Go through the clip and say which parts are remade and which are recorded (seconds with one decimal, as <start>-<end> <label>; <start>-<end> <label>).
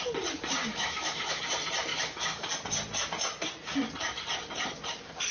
0.0-0.6 recorded; 0.6-1.4 remade; 1.4-1.9 recorded; 1.9-2.5 remade; 2.5-5.3 recorded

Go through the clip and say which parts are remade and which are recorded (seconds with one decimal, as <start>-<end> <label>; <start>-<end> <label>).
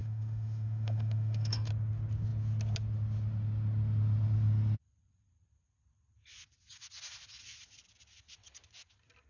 0.0-1.7 remade; 1.7-9.3 recorded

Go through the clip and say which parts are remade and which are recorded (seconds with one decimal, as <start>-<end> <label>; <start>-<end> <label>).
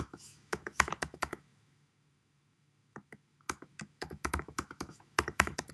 0.0-5.7 remade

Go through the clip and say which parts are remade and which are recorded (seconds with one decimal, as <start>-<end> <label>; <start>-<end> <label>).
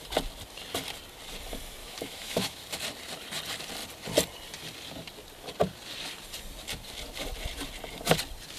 0.0-1.8 recorded; 1.8-2.6 remade; 2.6-8.6 recorded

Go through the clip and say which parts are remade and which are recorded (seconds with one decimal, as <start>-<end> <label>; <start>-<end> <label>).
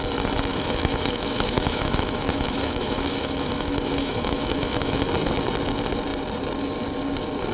0.0-0.5 recorded; 0.5-5.0 remade; 5.0-7.5 recorded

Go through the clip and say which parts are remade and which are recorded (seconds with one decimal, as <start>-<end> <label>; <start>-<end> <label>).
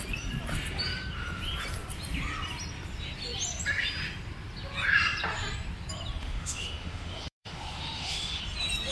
0.0-6.2 recorded; 6.2-8.4 remade; 8.4-8.9 recorded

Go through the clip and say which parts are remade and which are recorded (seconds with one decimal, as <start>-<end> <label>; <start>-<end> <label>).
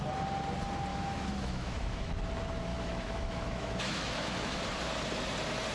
0.0-0.9 recorded; 0.9-2.1 remade; 2.1-2.7 recorded; 2.7-4.6 remade; 4.6-5.7 recorded